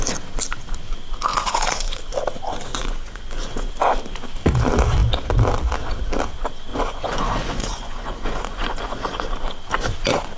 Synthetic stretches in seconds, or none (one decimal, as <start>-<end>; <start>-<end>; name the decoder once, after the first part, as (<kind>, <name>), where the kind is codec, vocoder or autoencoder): 1.3-2.0 (vocoder, Vocos); 2.7-3.7; 6.7-9.3